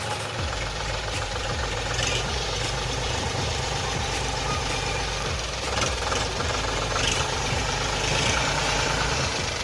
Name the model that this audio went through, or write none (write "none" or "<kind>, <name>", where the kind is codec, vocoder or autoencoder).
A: vocoder, BigVGAN v2